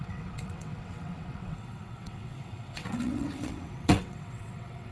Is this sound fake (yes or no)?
yes